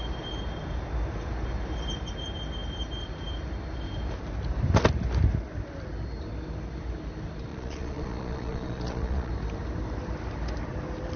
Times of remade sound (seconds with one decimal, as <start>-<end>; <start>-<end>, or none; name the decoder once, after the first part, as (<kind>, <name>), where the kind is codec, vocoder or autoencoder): 7.5-9.3 (vocoder, Vocos)